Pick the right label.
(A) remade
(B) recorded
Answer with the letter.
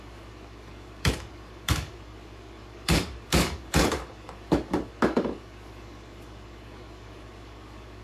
A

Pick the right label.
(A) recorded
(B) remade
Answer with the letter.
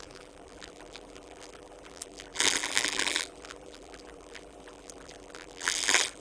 B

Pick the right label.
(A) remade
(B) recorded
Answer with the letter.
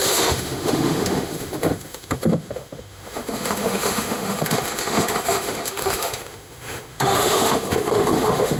A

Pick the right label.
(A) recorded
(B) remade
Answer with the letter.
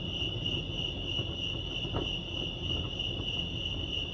A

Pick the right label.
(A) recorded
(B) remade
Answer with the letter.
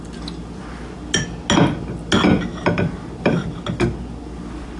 A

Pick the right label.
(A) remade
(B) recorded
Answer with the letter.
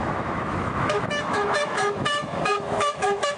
A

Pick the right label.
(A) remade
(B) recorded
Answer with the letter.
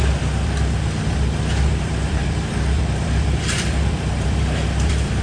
A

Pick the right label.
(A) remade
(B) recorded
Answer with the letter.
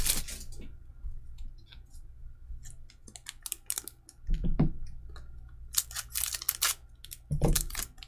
B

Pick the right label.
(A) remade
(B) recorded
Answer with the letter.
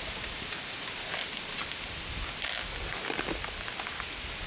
B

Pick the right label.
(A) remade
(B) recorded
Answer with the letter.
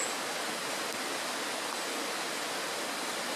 B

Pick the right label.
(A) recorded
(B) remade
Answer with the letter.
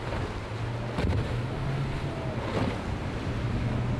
A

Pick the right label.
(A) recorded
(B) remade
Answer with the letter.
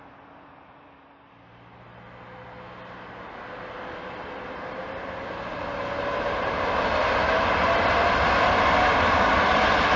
A